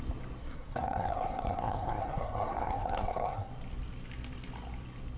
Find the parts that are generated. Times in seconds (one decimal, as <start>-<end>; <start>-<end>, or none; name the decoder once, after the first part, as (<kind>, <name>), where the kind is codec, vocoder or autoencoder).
0.4-3.5 (codec, SNAC)